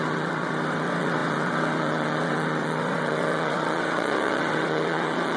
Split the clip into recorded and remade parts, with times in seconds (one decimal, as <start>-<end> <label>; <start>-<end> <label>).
0.0-5.4 remade